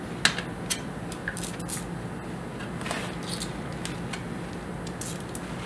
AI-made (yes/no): no